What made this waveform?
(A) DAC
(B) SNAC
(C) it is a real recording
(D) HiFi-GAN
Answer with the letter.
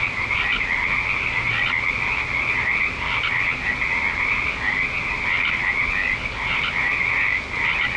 C